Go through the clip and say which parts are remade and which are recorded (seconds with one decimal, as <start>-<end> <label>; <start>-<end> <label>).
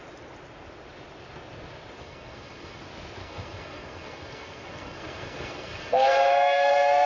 0.0-2.0 recorded; 2.0-2.8 remade; 2.8-3.2 recorded; 3.2-7.1 remade